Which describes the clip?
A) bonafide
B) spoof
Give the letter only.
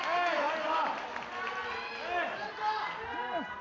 A